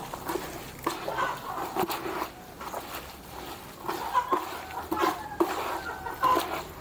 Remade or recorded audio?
recorded